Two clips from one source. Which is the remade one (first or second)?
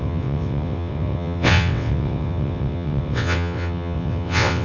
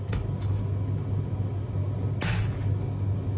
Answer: first